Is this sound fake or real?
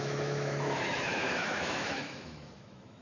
fake